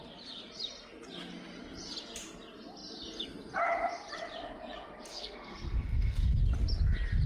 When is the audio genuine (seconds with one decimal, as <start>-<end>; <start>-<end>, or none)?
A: 0.0-5.1; 6.4-7.3

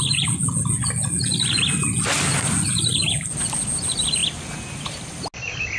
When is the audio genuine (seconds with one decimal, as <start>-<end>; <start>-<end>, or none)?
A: 0.0-5.8

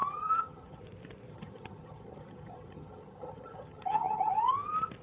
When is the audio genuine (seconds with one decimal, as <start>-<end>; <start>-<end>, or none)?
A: 0.8-1.3; 4.3-5.0

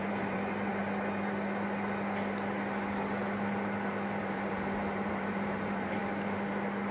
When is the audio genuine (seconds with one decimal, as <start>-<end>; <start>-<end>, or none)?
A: 0.8-4.2; 6.0-6.9